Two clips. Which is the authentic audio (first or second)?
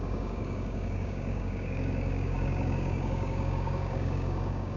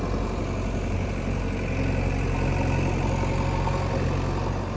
second